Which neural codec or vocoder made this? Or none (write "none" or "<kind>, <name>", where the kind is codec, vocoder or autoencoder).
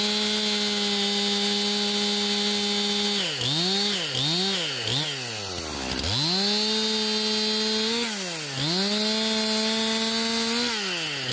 none